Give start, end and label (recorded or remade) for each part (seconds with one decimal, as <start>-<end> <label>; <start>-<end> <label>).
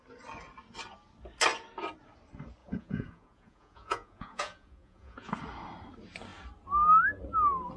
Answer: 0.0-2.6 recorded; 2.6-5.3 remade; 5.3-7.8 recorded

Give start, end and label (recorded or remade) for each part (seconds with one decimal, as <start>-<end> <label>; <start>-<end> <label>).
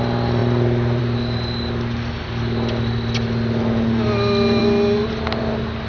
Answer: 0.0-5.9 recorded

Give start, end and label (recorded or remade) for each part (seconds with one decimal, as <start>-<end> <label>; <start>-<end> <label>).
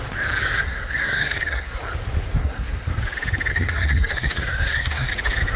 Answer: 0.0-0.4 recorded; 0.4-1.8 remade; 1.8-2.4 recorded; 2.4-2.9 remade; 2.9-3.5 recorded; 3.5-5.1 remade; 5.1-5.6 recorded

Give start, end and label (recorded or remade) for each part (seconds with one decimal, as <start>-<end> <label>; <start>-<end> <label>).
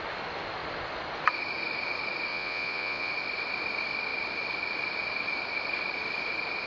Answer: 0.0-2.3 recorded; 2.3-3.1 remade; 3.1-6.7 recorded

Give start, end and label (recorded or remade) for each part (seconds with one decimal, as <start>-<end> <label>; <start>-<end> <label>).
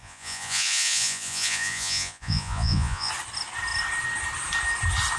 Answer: 0.0-3.1 remade; 3.1-5.2 recorded